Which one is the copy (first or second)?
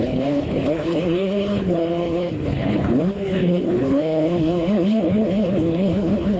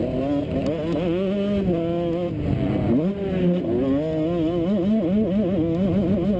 first